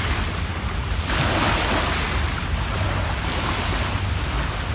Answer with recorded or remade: recorded